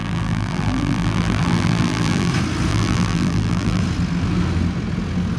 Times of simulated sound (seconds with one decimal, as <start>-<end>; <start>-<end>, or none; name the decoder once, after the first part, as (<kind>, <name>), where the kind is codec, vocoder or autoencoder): 0.0-2.3 (vocoder, BigVGAN v2); 2.7-3.8